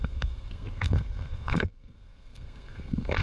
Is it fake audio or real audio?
fake